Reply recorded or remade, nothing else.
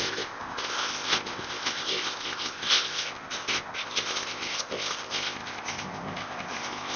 remade